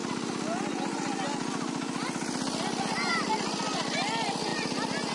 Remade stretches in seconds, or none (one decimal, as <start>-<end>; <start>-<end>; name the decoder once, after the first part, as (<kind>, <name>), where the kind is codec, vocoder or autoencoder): none